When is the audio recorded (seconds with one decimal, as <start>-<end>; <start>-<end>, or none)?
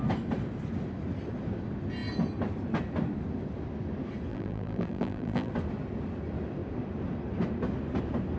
0.0-4.3; 5.5-8.4